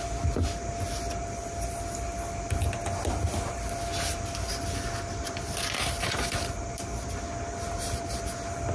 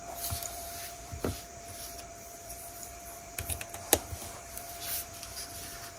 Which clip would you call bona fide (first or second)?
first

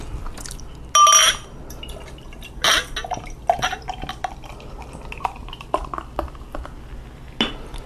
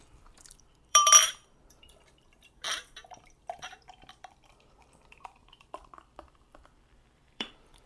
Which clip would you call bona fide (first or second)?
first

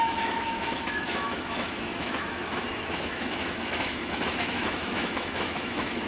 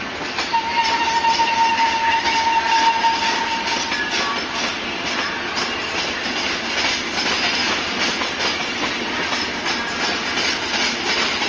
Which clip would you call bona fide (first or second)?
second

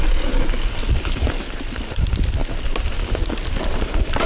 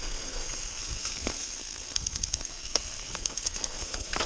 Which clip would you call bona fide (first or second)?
first